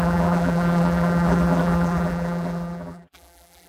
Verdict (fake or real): fake